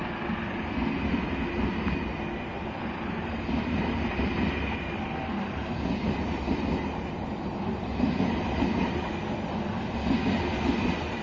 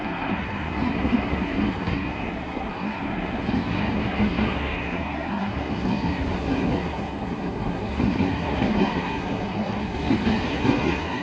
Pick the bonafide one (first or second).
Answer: first